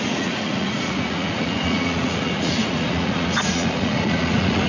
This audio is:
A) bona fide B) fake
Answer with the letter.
B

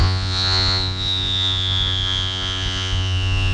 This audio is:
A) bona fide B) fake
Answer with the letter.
B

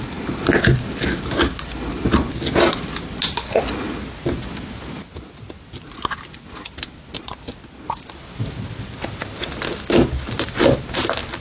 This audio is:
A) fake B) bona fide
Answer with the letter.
B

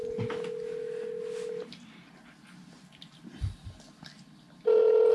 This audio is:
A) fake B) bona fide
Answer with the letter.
B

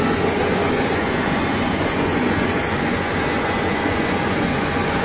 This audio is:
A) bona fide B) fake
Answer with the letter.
B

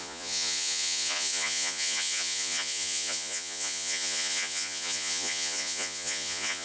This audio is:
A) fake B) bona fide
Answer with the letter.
A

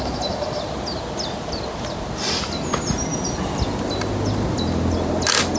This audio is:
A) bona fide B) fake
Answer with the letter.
A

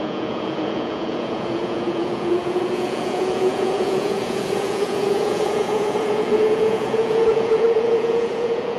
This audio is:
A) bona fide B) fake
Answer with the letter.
B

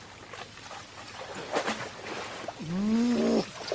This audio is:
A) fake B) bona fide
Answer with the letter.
B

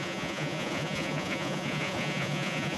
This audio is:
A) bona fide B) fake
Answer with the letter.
B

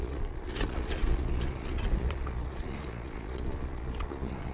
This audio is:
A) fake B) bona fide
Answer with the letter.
A